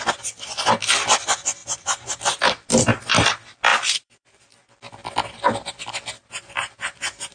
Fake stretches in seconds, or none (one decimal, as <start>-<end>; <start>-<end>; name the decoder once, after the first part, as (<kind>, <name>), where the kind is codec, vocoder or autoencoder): 1.6-2.4 (vocoder, BigVGAN v2); 3.7-4.7; 6.2-7.3